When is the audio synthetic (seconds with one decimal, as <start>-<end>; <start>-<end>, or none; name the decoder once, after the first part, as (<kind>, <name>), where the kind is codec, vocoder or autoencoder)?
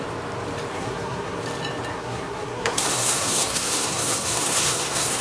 0.7-1.4 (codec, SNAC); 1.9-5.2